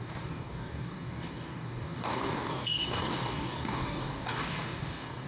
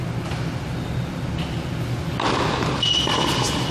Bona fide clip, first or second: second